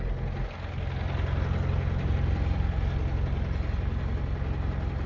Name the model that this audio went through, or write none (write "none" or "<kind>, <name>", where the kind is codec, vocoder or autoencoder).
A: none